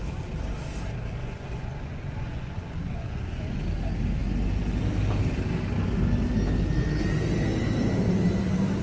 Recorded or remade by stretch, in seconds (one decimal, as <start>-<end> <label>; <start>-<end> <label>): 0.0-1.2 recorded; 1.2-3.6 remade; 3.6-8.8 recorded

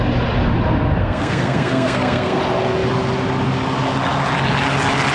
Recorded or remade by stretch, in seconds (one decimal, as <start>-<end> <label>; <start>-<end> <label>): 0.0-1.0 recorded; 1.0-2.4 remade; 2.4-5.1 recorded